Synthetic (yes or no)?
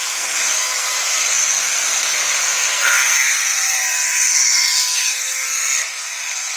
yes